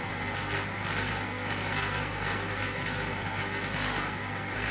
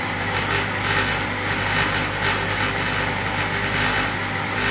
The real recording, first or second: second